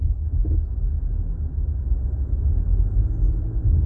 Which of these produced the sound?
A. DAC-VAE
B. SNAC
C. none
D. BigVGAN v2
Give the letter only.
C